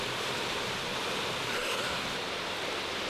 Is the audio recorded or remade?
recorded